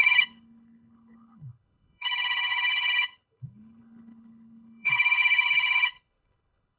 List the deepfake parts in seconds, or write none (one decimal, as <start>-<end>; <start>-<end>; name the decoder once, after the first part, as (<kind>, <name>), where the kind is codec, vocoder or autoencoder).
0.0-6.8 (codec, HILCodec)